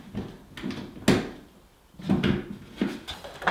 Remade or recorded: recorded